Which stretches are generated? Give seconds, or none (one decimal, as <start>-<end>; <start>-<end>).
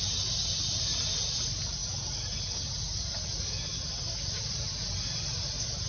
none